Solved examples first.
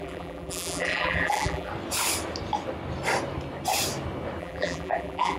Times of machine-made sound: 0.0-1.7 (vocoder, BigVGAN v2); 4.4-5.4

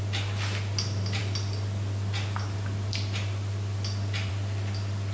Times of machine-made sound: none

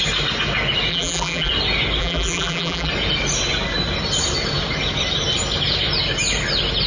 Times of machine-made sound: 0.9-1.5 (vocoder, BigVGAN v2); 2.0-2.9

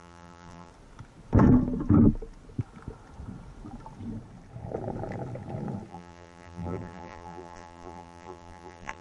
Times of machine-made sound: 0.0-0.7 (vocoder, BigVGAN v2); 5.9-9.0

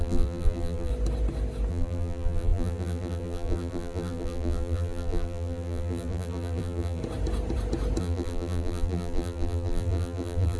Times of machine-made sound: 0.0-0.9 (vocoder, BigVGAN v2); 1.7-7.0; 8.0-10.6

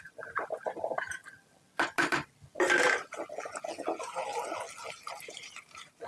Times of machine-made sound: 0.0-1.2 (vocoder, BigVGAN v2); 4.9-6.1

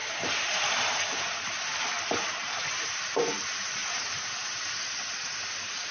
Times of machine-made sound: 0.0-3.3 (vocoder, BigVGAN v2); 3.8-4.6

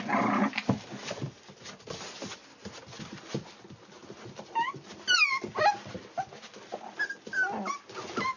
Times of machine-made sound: 4.0-6.5 (vocoder, BigVGAN v2)